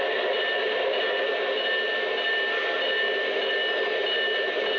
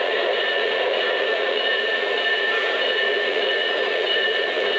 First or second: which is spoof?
second